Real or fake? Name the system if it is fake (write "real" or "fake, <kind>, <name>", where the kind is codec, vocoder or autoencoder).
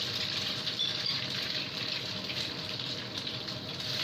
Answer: fake, vocoder, BigVGAN v2